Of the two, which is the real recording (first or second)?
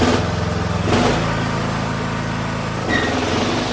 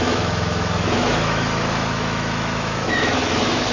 first